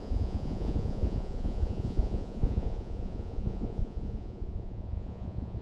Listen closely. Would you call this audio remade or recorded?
remade